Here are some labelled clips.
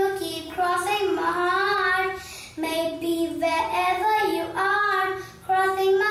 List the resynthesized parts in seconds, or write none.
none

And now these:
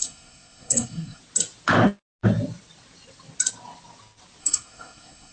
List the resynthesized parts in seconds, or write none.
0.0-1.2 (codec, SNAC); 4.4-5.3

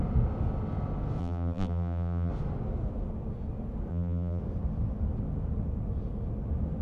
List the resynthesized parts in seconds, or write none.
1.2-2.3 (vocoder, BigVGAN v2); 3.9-4.4

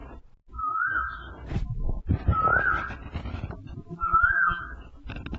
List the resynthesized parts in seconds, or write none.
3.9-4.6 (vocoder, BigVGAN v2)

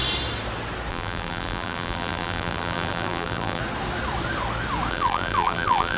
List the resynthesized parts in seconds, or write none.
0.9-3.6 (vocoder, BigVGAN v2); 4.9-6.0

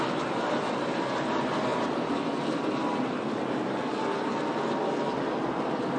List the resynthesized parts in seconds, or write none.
1.7-3.6 (vocoder, BigVGAN v2)